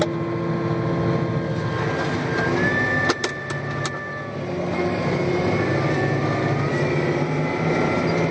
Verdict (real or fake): real